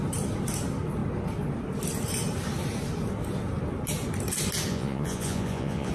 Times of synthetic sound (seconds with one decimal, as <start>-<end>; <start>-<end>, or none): 4.7-5.9